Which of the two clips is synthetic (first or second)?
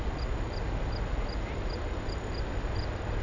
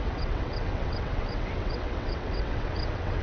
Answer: second